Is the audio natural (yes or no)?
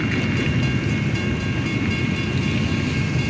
yes